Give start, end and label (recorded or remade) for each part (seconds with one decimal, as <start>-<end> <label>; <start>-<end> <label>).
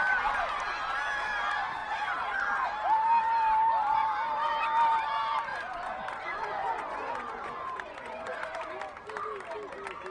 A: 0.0-5.5 recorded; 5.5-8.7 remade; 8.7-10.1 recorded